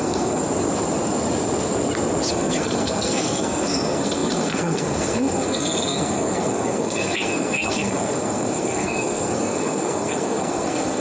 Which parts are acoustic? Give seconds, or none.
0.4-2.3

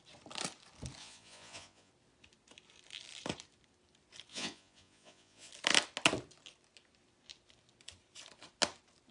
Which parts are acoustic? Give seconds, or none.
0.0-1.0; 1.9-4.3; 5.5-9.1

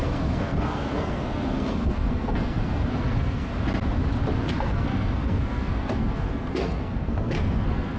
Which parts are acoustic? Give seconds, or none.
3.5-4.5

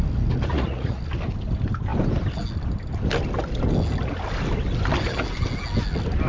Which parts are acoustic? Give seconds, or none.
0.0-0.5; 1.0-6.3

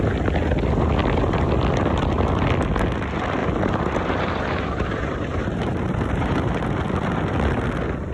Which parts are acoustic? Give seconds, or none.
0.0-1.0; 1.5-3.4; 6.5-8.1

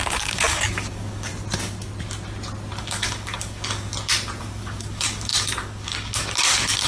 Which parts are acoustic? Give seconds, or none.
1.3-2.8; 3.9-4.4

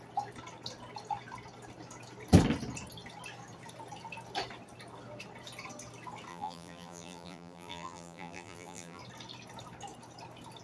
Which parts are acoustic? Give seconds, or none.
0.0-6.3; 9.0-10.6

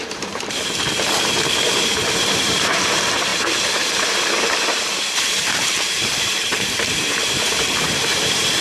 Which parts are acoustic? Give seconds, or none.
none